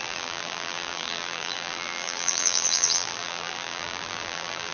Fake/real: fake